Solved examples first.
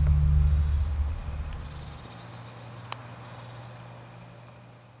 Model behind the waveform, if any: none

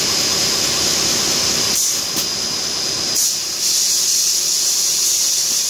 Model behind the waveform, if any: none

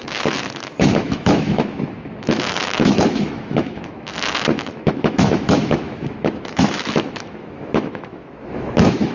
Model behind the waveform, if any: autoencoder, DAC-VAE